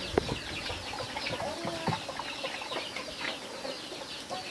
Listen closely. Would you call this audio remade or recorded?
recorded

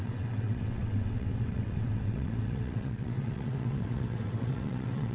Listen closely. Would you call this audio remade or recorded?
remade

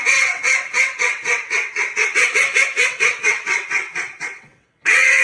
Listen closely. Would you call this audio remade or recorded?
remade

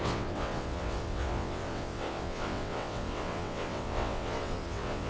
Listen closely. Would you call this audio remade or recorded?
remade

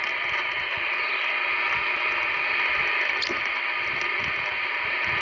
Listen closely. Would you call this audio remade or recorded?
recorded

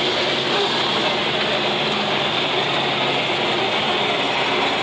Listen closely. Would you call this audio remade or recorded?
recorded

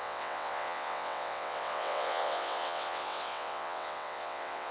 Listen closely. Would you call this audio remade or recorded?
remade